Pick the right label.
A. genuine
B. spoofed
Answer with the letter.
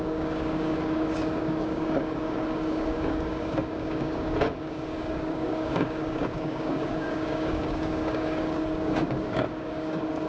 B